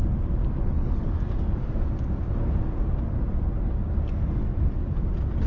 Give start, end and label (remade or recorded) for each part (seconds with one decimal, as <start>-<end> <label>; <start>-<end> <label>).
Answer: 0.0-0.6 recorded; 0.6-1.1 remade; 1.1-5.5 recorded